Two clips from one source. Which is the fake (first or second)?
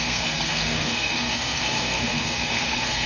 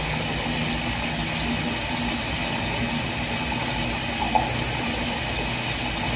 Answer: first